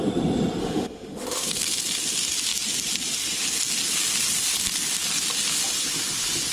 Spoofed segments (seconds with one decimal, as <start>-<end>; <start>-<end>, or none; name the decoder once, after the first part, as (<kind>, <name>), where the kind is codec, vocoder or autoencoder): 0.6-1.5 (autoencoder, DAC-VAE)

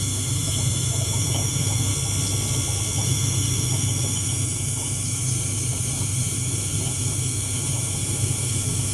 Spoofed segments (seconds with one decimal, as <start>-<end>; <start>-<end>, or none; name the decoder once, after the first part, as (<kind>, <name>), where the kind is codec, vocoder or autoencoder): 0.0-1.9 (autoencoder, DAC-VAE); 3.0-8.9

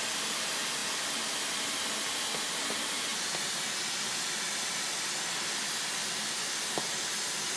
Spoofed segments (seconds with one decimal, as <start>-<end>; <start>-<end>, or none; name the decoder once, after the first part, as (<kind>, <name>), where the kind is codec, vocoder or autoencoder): none

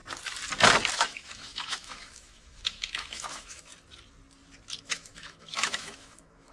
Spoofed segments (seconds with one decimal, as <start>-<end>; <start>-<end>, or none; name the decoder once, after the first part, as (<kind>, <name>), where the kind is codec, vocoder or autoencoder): 0.9-3.7 (autoencoder, DAC-VAE); 4.8-6.5